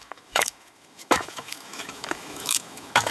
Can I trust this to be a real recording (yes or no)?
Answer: no